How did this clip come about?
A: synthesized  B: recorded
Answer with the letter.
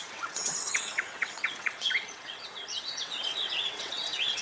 A